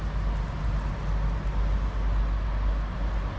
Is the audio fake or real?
real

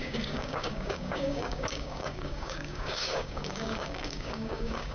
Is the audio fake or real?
fake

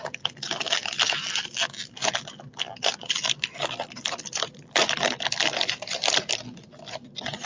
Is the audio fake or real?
real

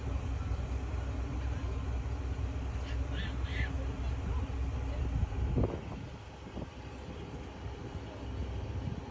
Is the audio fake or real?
real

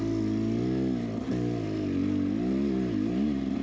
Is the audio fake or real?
real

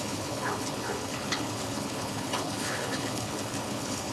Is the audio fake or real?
fake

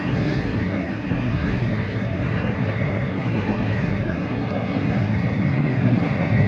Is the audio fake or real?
fake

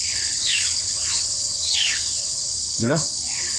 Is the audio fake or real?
fake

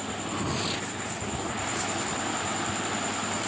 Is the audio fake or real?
real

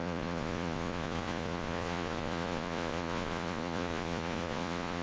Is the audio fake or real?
fake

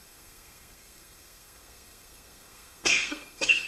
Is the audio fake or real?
fake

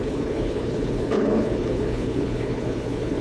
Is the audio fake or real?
fake